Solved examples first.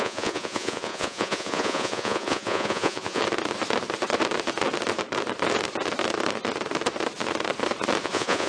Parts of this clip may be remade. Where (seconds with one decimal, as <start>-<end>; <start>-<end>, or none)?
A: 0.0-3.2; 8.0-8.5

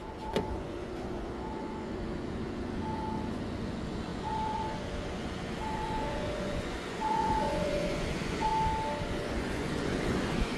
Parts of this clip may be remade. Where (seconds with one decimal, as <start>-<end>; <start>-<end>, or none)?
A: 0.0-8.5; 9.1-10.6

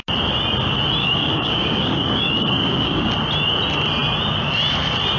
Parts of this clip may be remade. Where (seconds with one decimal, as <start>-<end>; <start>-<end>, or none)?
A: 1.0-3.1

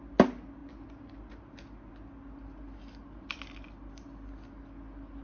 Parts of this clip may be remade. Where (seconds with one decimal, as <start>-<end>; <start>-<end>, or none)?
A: none

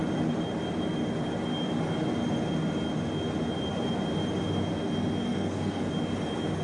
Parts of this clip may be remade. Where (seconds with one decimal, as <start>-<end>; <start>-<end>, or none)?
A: 5.2-5.9

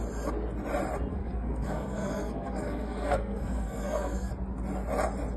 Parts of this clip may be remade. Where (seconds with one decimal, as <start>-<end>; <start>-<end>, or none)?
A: 1.1-4.3

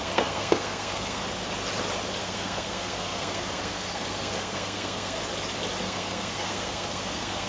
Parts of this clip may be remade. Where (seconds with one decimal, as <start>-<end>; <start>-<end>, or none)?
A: 0.0-1.2; 2.2-5.2; 5.8-7.5

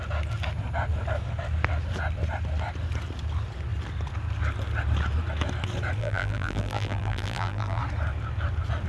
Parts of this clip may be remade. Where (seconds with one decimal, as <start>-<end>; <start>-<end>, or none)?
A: 6.0-7.8